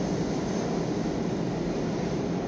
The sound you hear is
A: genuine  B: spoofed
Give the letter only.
A